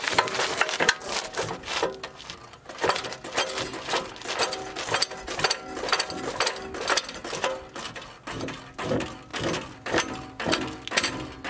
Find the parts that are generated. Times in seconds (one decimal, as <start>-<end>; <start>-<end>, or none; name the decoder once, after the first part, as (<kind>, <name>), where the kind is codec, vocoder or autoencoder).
2.4-3.0 (vocoder, BigVGAN v2)